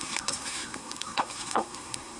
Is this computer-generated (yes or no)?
yes